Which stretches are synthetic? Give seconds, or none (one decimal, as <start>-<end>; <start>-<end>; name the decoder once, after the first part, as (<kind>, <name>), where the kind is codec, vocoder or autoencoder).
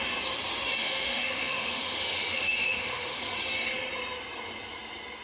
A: 0.8-3.2 (autoencoder, DAC-VAE)